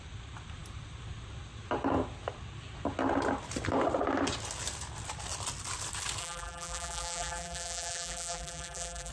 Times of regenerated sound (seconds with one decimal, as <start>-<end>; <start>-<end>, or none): 6.2-9.1